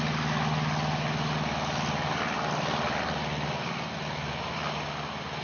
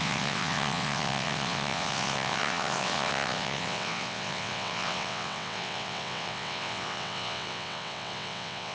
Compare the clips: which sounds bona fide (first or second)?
first